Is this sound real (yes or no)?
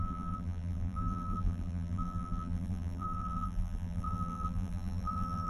no